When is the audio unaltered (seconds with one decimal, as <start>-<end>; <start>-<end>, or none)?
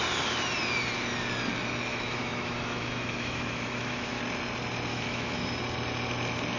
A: 0.0-1.9; 4.2-4.9; 5.6-6.6